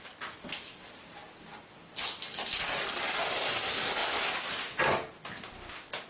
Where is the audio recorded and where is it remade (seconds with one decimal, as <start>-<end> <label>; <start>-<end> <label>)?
0.0-6.1 recorded